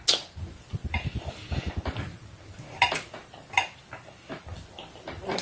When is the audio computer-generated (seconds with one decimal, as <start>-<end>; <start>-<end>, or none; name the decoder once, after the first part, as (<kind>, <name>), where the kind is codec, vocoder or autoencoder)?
none